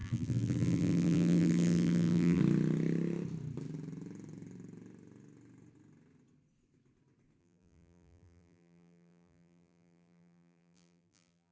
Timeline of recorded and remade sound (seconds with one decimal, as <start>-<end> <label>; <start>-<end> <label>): 0.0-2.4 remade; 2.4-7.4 recorded; 7.4-11.5 remade